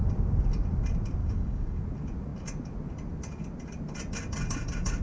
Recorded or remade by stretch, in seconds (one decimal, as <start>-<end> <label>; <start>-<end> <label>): 0.0-1.2 recorded; 1.2-1.8 remade; 1.8-5.0 recorded